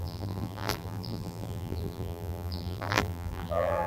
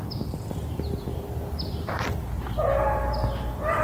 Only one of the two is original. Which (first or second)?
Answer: second